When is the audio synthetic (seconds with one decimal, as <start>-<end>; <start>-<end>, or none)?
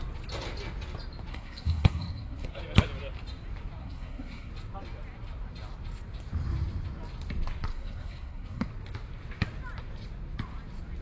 1.3-2.6; 3.8-4.5; 7.7-8.7